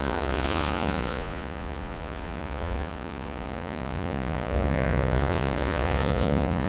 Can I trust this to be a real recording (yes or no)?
no